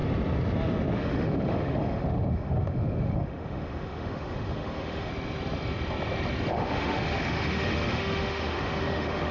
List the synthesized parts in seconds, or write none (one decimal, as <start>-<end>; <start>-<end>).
1.0-5.1; 6.5-9.3